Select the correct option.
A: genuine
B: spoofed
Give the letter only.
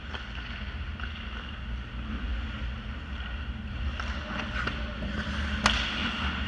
A